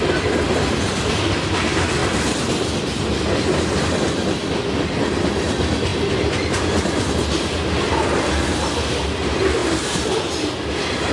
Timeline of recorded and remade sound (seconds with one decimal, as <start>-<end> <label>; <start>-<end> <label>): 0.0-11.1 recorded